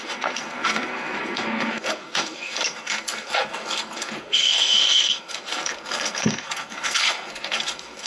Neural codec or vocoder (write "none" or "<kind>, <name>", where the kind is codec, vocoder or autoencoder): codec, SNAC